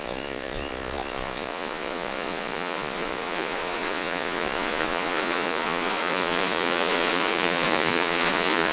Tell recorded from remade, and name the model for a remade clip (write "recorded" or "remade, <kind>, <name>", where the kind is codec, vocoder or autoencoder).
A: remade, vocoder, Vocos